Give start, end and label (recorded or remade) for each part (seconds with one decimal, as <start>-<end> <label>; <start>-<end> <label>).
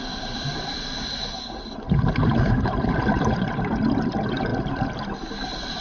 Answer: 0.0-5.8 recorded